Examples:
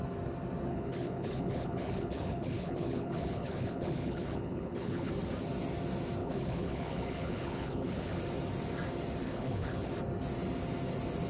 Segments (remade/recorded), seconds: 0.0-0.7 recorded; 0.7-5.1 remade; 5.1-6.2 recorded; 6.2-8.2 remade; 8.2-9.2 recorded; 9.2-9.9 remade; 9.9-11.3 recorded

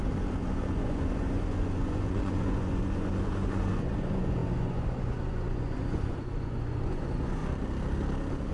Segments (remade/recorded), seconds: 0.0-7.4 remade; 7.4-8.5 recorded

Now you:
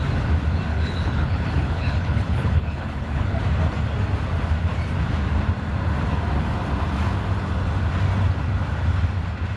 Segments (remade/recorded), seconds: 0.0-0.7 recorded; 0.7-3.4 remade; 3.4-9.6 recorded